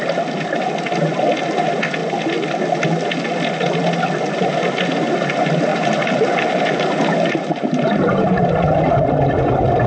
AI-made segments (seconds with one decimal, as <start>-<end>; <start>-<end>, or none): 5.7-8.4